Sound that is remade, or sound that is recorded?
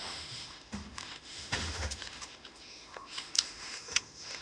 remade